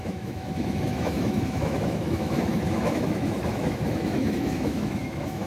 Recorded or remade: remade